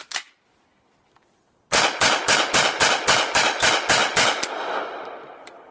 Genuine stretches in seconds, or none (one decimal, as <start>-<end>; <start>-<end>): 0.0-5.7